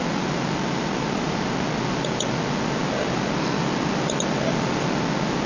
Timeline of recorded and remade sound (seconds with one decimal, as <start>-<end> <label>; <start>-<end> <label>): 0.0-5.5 recorded